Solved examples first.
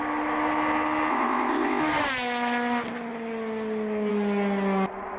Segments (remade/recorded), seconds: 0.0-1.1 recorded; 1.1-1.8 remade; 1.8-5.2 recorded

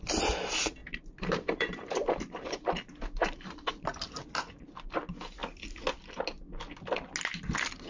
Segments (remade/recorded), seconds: 0.0-0.8 recorded; 0.8-3.7 remade; 3.7-7.9 recorded

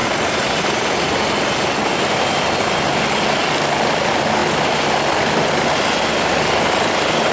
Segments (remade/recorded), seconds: 0.0-7.3 recorded

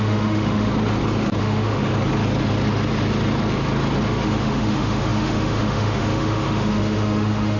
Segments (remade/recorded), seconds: 0.0-0.7 remade; 0.7-1.4 recorded; 1.4-1.9 remade; 1.9-4.1 recorded; 4.1-7.6 remade

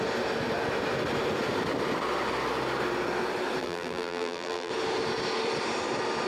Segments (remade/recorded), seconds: 0.0-3.6 recorded; 3.6-4.7 remade; 4.7-6.3 recorded

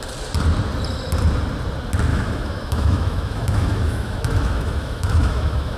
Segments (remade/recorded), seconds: 0.0-2.1 recorded; 2.1-5.8 remade